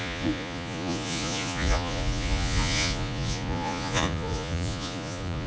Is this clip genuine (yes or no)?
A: no